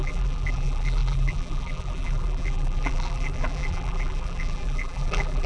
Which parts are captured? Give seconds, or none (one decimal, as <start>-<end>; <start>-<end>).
none